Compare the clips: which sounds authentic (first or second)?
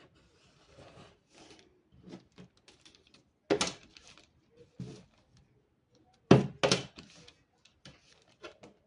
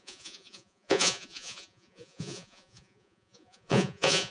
first